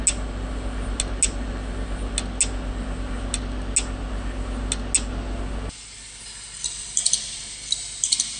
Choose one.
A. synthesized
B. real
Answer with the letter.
B